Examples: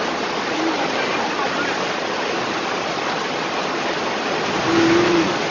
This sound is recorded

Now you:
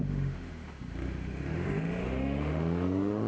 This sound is remade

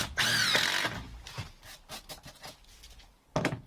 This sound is recorded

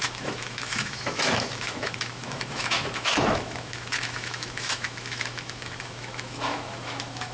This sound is remade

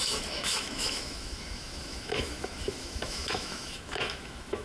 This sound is remade